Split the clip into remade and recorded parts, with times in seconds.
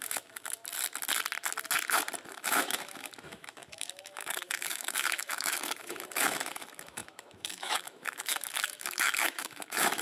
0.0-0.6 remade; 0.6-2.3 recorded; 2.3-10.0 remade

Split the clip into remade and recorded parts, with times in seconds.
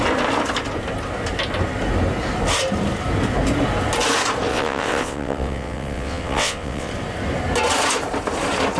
0.0-4.5 recorded; 4.5-6.9 remade; 6.9-8.8 recorded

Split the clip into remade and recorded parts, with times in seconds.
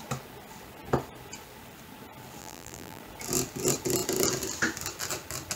0.0-2.4 recorded; 2.4-3.0 remade; 3.0-5.6 recorded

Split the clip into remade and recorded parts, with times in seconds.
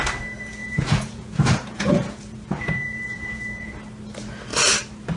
0.0-0.6 recorded; 0.6-3.7 remade; 3.7-5.2 recorded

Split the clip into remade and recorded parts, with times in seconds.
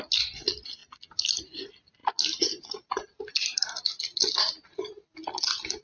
0.0-5.8 recorded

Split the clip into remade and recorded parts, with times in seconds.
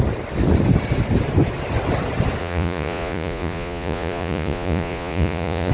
0.0-2.4 recorded; 2.4-5.7 remade